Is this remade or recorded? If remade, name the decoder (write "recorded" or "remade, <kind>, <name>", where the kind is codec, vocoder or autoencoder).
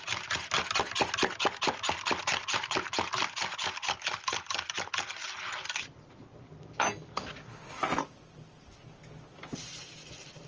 recorded